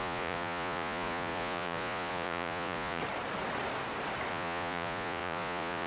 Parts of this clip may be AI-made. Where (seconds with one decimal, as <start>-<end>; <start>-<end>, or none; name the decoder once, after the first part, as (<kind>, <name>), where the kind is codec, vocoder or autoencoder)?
0.0-3.0 (vocoder, Vocos); 4.3-5.9